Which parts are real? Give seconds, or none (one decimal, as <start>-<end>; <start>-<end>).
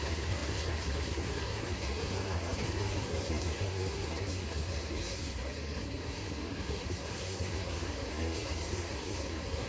none